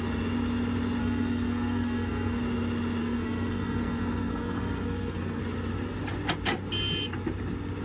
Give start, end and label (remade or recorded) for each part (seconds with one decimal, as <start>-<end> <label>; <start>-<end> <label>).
0.0-1.0 recorded; 1.0-2.4 remade; 2.4-3.0 recorded; 3.0-5.4 remade; 5.4-7.8 recorded